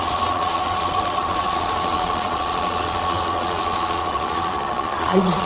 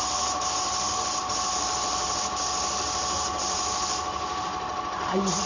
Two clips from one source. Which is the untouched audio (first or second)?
second